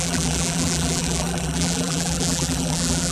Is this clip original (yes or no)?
no